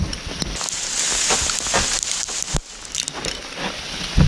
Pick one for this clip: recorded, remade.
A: recorded